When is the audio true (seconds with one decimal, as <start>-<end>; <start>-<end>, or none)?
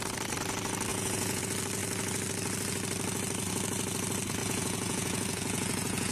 0.0-0.9; 1.4-4.4